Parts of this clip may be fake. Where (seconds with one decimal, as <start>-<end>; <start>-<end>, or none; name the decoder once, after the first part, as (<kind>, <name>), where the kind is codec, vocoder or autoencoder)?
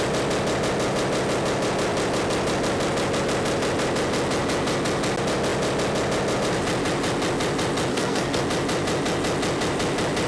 7.9-8.4 (codec, SNAC)